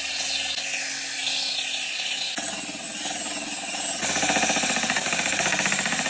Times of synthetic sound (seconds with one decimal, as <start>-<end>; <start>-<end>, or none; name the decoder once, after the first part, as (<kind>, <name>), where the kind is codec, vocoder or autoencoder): none